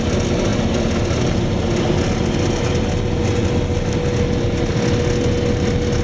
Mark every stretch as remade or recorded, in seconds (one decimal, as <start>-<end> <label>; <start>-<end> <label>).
0.0-6.0 recorded